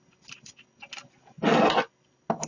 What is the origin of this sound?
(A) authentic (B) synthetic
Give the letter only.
A